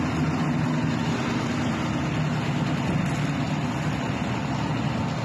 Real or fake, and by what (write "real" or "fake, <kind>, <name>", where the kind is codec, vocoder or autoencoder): real